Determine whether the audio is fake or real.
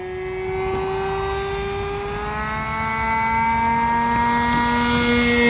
real